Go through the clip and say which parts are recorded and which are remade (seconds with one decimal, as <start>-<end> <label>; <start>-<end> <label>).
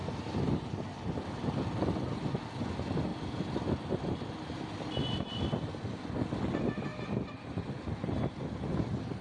0.0-2.3 recorded; 2.3-6.9 remade; 6.9-8.3 recorded; 8.3-9.2 remade